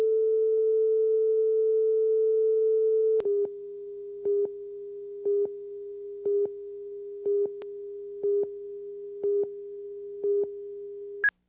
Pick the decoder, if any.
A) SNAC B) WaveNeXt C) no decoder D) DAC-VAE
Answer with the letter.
C